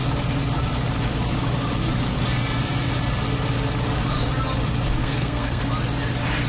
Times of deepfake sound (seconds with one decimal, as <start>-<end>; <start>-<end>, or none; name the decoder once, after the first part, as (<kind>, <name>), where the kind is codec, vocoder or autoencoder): 5.0-5.6 (codec, SNAC)